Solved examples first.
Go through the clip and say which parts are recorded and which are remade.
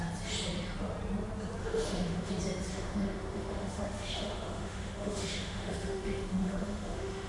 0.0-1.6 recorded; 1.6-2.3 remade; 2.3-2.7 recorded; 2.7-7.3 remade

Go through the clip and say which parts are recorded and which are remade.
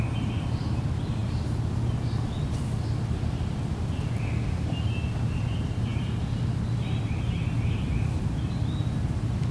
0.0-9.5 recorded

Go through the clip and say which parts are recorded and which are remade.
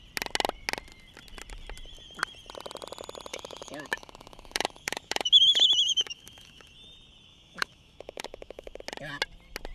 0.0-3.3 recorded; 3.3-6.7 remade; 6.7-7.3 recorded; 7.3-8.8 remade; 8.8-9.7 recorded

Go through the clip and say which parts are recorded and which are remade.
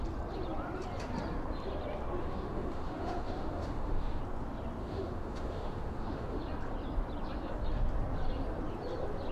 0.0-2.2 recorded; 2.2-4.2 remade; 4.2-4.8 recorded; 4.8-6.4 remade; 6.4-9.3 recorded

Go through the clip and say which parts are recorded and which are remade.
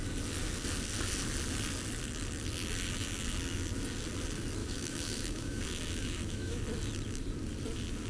0.0-4.6 recorded; 4.6-6.6 remade; 6.6-8.1 recorded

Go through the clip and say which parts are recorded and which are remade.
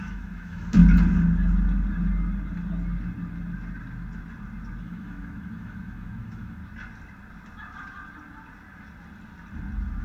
0.0-0.8 remade; 0.8-4.8 recorded; 4.8-6.6 remade; 6.6-10.0 recorded